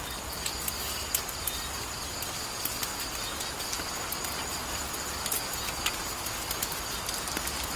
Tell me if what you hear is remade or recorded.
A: recorded